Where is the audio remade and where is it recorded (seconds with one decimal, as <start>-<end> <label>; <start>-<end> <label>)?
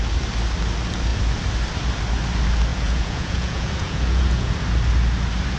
0.0-2.7 recorded; 2.7-4.5 remade; 4.5-5.6 recorded